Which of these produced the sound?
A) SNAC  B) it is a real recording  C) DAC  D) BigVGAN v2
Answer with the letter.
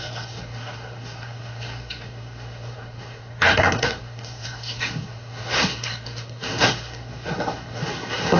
A